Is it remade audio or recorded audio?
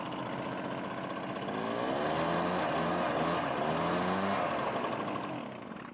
recorded